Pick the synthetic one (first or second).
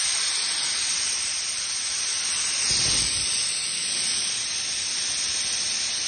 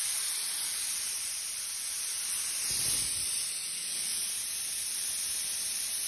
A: second